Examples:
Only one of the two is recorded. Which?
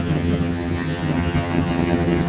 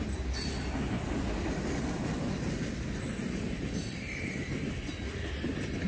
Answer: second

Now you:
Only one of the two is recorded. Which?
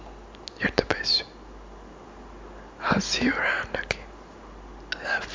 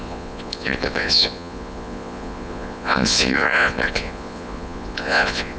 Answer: first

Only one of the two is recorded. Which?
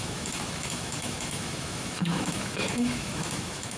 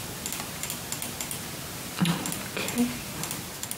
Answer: second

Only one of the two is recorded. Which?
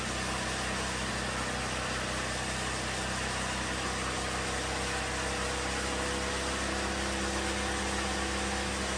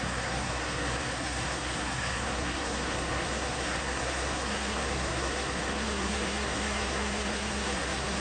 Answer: first